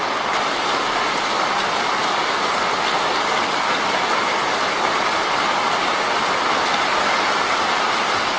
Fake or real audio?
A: real